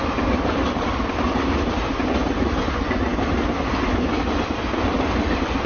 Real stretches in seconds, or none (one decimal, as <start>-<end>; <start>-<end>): 0.0-5.7